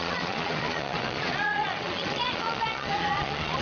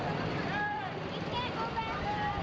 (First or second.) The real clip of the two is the second